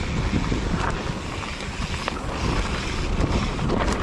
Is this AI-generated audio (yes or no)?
no